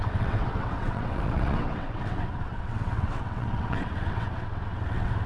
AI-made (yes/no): yes